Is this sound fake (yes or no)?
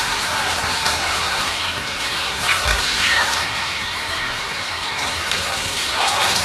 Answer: yes